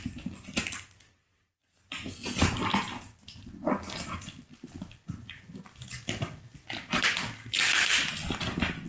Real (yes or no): yes